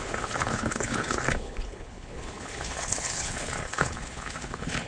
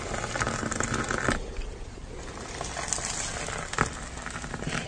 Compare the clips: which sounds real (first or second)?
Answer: second